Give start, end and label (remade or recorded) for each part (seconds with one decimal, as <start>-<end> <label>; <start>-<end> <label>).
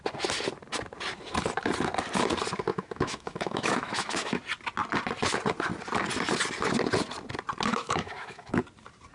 0.0-2.7 recorded; 2.7-4.4 remade; 4.4-7.7 recorded; 7.7-8.6 remade; 8.6-9.1 recorded